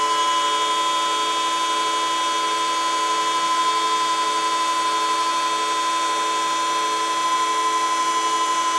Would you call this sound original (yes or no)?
yes